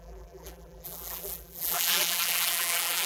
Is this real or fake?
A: fake